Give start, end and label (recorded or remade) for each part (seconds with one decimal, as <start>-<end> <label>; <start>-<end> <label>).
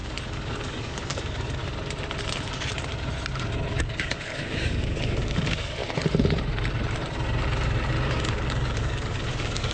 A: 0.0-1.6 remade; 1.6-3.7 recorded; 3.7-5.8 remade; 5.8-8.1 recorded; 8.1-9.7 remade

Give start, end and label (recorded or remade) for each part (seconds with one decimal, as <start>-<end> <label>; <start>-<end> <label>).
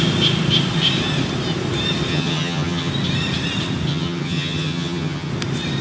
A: 0.0-2.1 recorded; 2.1-2.9 remade; 2.9-3.9 recorded; 3.9-5.3 remade; 5.3-5.8 recorded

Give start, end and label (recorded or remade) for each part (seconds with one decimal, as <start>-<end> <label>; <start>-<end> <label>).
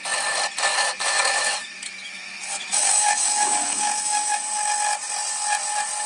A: 0.0-0.7 recorded; 0.7-4.4 remade; 4.4-6.1 recorded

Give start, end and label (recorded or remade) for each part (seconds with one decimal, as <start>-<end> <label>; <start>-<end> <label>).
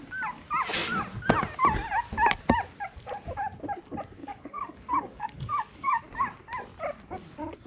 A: 0.0-4.2 recorded; 4.2-6.0 remade; 6.0-7.7 recorded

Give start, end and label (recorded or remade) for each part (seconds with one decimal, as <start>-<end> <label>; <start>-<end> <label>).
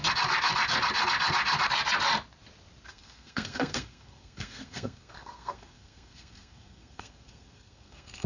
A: 0.0-2.9 recorded; 2.9-8.3 remade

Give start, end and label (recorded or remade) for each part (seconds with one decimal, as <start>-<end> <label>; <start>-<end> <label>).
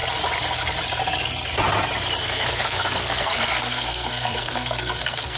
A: 0.0-2.2 recorded; 2.2-5.4 remade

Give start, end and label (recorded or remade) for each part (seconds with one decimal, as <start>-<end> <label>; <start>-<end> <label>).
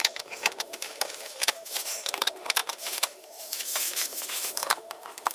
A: 0.0-5.3 remade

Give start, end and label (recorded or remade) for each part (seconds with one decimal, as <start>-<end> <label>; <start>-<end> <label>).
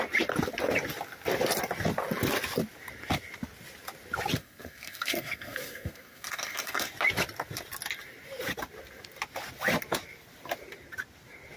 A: 0.0-4.4 recorded; 4.4-6.9 remade; 6.9-11.6 recorded